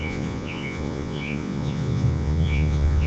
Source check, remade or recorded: remade